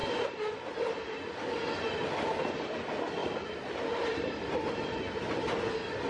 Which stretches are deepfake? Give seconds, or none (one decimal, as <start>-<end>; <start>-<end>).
none